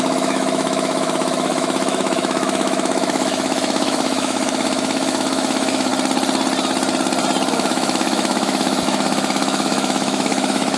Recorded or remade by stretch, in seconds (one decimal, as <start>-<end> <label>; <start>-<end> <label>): 0.0-5.9 remade; 5.9-7.5 recorded; 7.5-10.8 remade